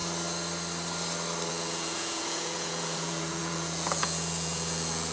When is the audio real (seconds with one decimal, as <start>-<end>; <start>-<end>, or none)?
0.0-1.5